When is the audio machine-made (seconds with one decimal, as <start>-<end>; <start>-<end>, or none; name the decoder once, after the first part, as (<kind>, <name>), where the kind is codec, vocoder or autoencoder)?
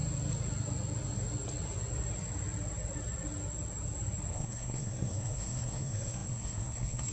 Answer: 4.3-7.1 (codec, SNAC)